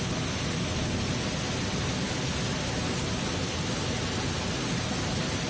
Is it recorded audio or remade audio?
recorded